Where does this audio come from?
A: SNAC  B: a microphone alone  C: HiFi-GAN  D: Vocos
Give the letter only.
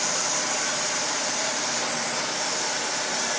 B